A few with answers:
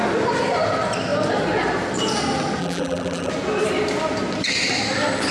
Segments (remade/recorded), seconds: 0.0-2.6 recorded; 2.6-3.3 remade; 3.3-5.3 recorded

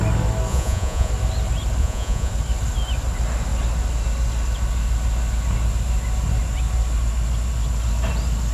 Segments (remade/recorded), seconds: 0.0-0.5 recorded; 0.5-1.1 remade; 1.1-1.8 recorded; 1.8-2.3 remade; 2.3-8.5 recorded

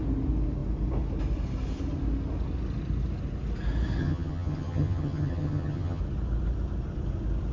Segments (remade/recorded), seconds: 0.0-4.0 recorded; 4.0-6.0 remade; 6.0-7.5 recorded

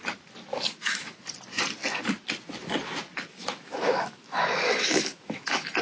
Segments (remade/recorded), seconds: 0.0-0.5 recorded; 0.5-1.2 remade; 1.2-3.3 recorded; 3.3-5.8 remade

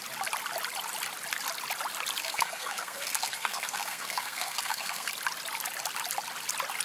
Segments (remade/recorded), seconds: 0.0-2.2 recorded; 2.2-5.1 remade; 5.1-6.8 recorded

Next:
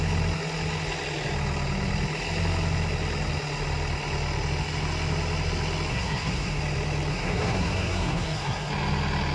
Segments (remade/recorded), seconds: 0.0-5.9 recorded; 5.9-6.6 remade; 6.6-7.1 recorded; 7.1-8.7 remade; 8.7-9.3 recorded

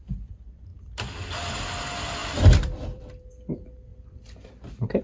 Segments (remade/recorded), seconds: 0.0-2.2 recorded; 2.2-3.0 remade; 3.0-3.9 recorded; 3.9-5.0 remade